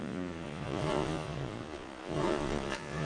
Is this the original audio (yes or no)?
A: no